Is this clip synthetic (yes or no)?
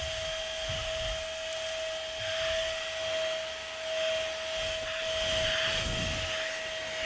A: no